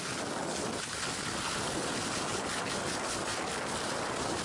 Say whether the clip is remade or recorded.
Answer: recorded